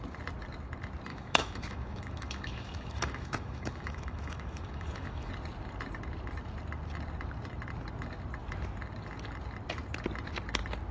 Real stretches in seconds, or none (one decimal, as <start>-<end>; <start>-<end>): 0.0-1.1; 5.3-10.9